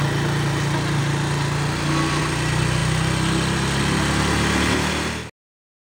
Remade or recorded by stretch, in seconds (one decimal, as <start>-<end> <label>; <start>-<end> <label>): 0.0-6.0 recorded